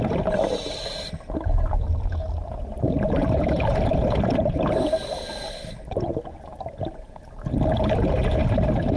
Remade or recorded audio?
recorded